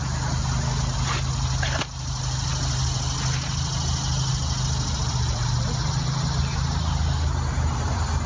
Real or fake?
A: real